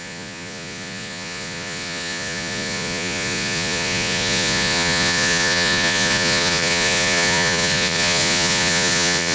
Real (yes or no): no